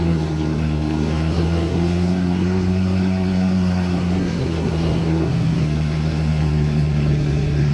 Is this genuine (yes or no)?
no